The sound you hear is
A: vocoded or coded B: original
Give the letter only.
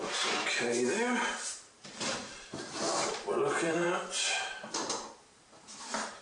A